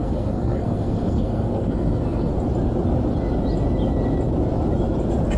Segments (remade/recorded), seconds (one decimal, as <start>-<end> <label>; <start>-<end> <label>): 0.0-2.3 remade; 2.3-5.4 recorded